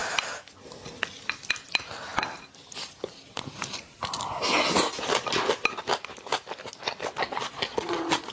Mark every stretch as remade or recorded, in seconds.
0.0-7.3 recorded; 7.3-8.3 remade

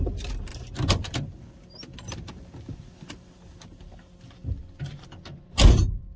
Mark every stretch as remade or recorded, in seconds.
0.0-6.2 recorded

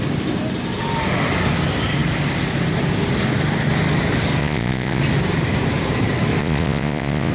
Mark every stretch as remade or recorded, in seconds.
0.0-4.4 recorded; 4.4-5.0 remade; 5.0-6.4 recorded; 6.4-7.3 remade